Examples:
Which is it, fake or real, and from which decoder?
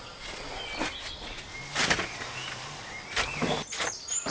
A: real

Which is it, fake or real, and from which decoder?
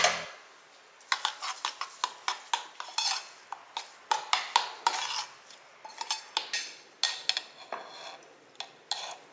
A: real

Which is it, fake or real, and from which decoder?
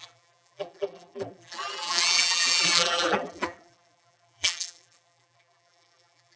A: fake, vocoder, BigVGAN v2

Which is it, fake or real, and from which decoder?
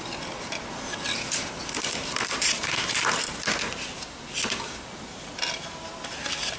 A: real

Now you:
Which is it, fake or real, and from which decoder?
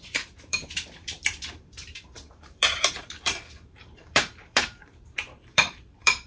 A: fake, vocoder, BigVGAN v2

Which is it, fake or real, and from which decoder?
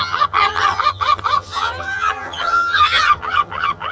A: fake, vocoder, HiFi-GAN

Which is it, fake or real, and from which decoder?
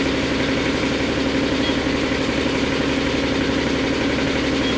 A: real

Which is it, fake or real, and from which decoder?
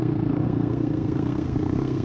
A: fake, codec, SNAC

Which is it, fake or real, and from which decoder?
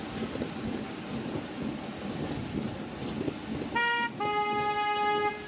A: real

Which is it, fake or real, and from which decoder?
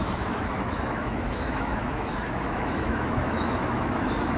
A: fake, autoencoder, DAC-VAE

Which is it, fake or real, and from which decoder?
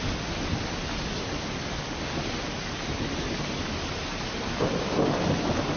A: real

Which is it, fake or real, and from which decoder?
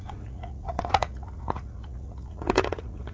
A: fake, vocoder, Vocos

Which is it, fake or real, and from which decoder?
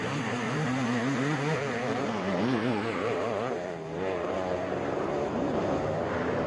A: fake, vocoder, BigVGAN v2